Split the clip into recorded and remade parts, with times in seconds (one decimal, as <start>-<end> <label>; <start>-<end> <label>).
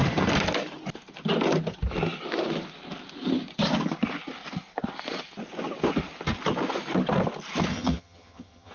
0.0-7.7 recorded; 7.7-8.7 remade